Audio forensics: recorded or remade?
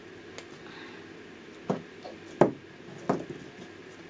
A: recorded